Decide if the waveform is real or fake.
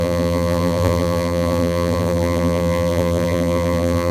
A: fake